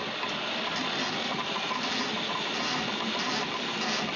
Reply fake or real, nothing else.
real